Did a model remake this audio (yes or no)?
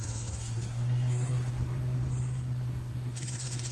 yes